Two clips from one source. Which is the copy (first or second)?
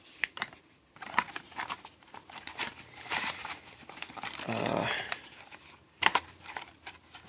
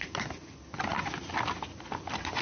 first